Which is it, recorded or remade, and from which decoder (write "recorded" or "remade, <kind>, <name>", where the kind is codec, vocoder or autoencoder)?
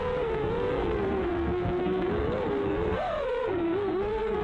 remade, codec, SNAC